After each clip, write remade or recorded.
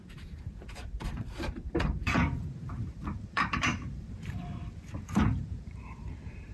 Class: remade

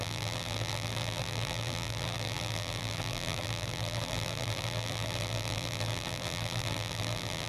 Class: remade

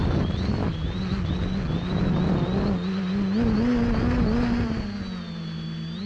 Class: recorded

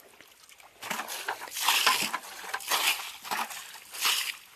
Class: recorded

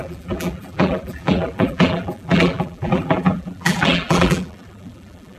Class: remade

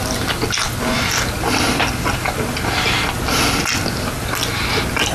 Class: recorded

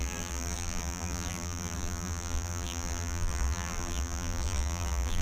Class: remade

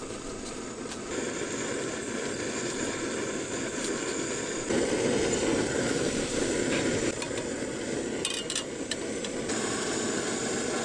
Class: remade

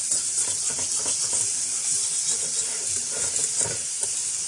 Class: recorded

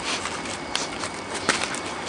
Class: remade